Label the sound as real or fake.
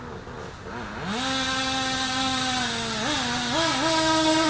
real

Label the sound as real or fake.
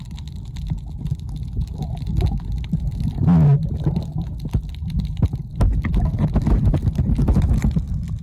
real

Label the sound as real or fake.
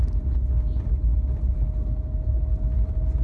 real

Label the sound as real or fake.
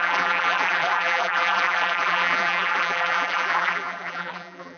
fake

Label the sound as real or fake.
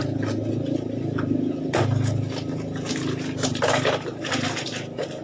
real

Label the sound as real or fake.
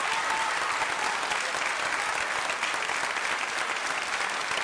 real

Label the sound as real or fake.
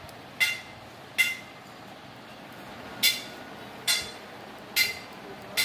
real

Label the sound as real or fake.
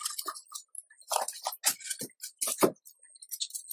real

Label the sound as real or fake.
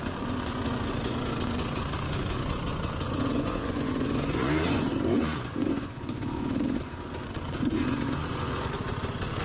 fake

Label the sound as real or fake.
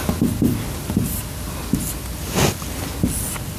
real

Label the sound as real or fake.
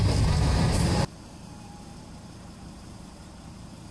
fake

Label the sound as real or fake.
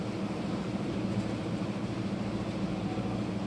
fake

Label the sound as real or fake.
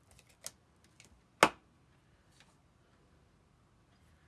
real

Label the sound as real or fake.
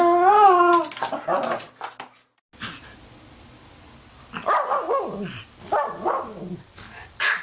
real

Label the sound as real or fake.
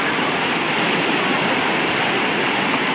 fake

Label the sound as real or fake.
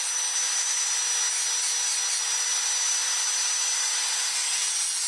real